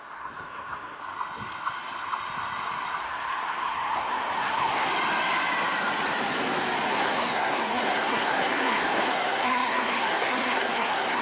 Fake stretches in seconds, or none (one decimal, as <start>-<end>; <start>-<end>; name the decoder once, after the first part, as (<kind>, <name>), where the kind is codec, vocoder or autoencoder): 0.0-1.0 (codec, SNAC); 3.0-4.9; 6.9-11.2